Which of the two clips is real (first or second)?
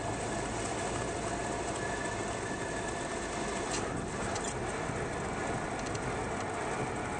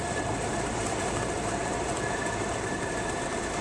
first